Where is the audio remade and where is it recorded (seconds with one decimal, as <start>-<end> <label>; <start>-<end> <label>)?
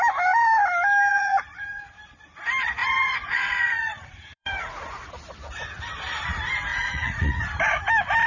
0.0-1.1 recorded; 1.1-1.8 remade; 1.8-2.8 recorded; 2.8-5.1 remade; 5.1-6.7 recorded; 6.7-7.4 remade; 7.4-8.3 recorded